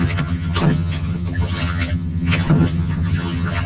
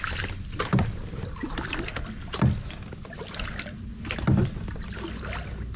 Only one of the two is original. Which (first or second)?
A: second